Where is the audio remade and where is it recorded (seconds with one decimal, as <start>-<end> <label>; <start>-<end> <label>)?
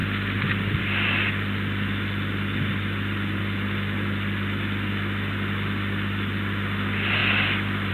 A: 0.0-7.9 recorded